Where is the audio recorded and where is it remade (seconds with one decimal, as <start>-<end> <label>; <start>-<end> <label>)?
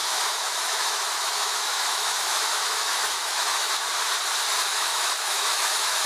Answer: 0.0-3.7 remade; 3.7-4.7 recorded; 4.7-6.1 remade